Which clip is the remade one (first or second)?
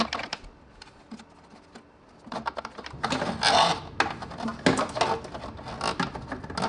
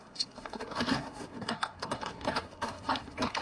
second